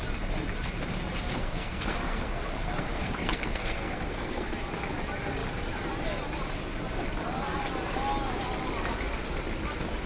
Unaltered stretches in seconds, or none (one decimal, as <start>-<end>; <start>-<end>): 0.0-1.3; 4.5-10.1